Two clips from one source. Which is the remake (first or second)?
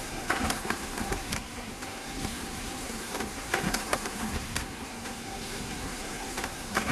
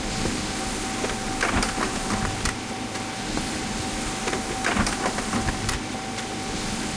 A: first